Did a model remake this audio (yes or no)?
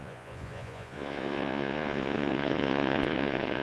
yes